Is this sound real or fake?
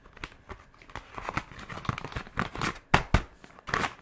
real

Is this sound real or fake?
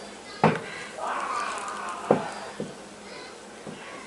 real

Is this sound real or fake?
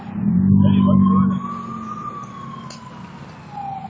real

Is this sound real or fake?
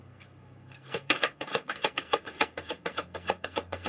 fake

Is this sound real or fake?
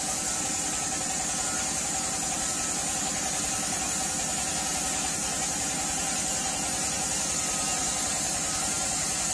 real